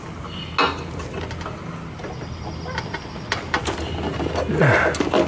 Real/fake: real